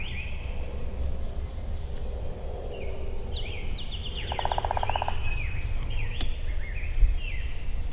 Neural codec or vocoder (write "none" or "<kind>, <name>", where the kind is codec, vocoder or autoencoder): none